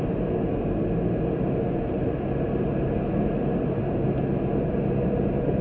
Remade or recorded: recorded